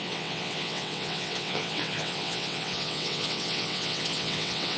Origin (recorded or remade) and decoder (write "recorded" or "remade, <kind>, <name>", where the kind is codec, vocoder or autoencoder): remade, vocoder, WaveNeXt